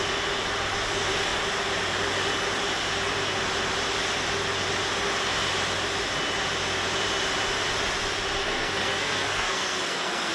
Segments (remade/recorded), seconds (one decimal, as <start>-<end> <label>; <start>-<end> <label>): 0.0-8.4 recorded; 8.4-10.3 remade